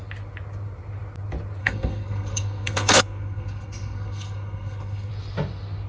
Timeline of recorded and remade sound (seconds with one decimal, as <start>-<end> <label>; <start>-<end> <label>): 0.0-1.6 recorded; 1.6-5.1 remade; 5.1-5.9 recorded